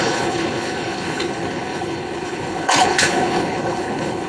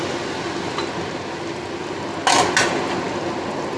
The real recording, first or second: second